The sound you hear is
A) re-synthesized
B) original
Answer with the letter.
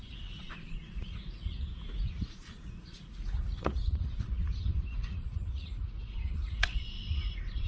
A